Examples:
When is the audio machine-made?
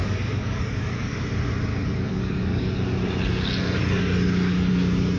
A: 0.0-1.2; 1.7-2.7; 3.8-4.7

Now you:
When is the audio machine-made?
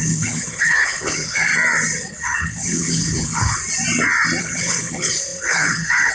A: 0.0-1.5; 2.1-3.6; 4.4-6.1